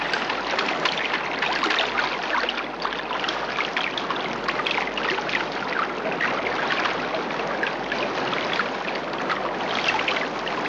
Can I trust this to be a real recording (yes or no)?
yes